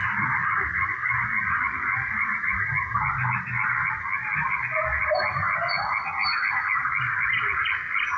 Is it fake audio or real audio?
real